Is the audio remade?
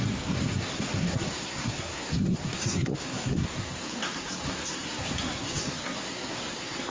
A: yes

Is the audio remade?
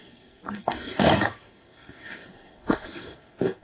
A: yes